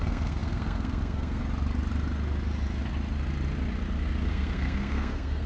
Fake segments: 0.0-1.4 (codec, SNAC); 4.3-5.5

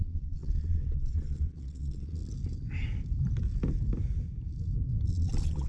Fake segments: 0.0-2.2 (vocoder, Vocos); 5.1-5.7

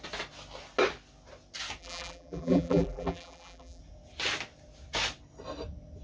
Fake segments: 1.8-3.8 (vocoder, BigVGAN v2)

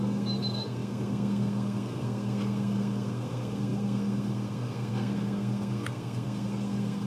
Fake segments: 0.0-7.1 (codec, SNAC)

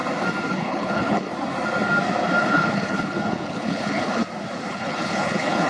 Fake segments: 0.5-1.3 (codec, HILCodec); 2.4-4.2; 4.7-5.7

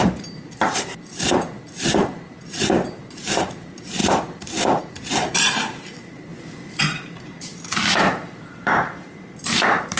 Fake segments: 0.0-4.0 (vocoder, BigVGAN v2); 4.8-6.3; 6.8-10.0

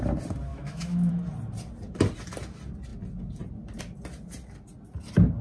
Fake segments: 0.5-1.1 (autoencoder, DAC-VAE)